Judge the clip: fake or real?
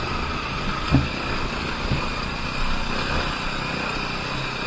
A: real